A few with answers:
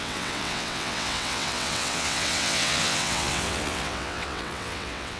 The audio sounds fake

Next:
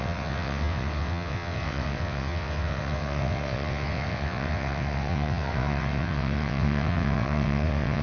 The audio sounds fake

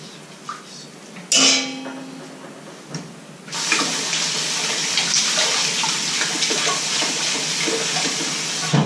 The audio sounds real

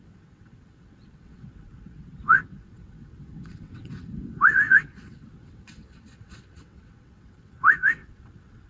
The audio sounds fake